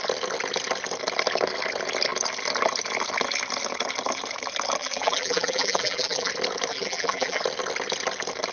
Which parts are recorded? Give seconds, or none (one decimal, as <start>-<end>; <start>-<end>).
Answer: 0.0-4.8; 6.3-6.7; 7.4-8.5